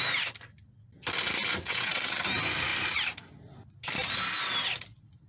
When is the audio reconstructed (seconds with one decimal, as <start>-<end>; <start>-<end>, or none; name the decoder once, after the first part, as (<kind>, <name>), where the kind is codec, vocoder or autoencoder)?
1.5-2.2 (vocoder, WaveNeXt)